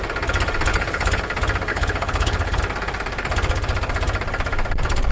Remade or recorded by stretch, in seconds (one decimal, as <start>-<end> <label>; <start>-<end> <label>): 0.0-0.7 recorded; 0.7-1.2 remade; 1.2-1.7 recorded; 1.7-2.6 remade; 2.6-5.1 recorded